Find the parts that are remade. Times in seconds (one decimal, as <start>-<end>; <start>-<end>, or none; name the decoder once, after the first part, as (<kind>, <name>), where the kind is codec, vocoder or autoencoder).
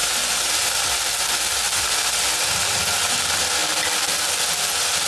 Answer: none